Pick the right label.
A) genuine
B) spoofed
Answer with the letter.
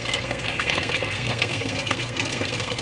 B